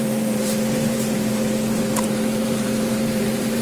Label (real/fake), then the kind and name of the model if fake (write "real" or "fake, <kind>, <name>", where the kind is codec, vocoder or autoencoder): fake, vocoder, BigVGAN v2